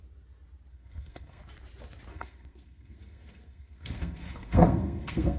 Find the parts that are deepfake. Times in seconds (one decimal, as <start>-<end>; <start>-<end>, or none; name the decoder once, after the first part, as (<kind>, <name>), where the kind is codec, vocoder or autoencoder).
0.7-1.4 (codec, SNAC); 2.1-5.4